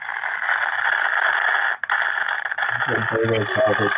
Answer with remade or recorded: recorded